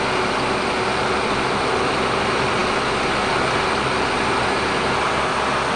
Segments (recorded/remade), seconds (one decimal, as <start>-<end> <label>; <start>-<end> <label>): 0.0-5.8 recorded